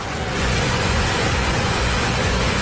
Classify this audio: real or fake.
fake